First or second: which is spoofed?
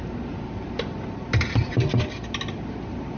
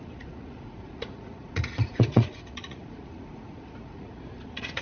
second